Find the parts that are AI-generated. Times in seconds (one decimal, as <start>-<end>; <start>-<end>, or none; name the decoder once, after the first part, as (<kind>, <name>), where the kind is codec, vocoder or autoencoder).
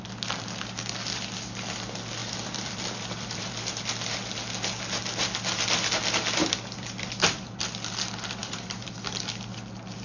2.2-3.5 (vocoder, BigVGAN v2); 6.4-7.6; 8.4-8.9